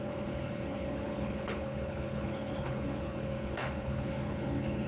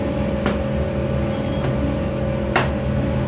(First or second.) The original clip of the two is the second